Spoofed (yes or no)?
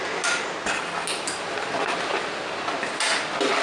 no